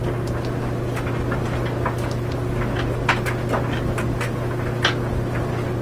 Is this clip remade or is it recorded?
recorded